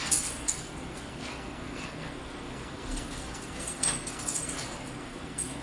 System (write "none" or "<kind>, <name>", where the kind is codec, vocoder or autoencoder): codec, SNAC